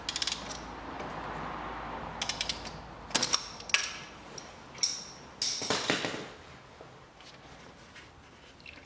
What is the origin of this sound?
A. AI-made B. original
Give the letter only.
B